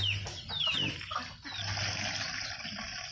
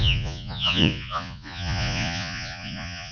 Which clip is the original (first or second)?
first